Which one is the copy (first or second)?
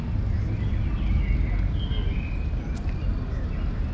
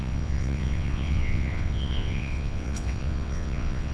second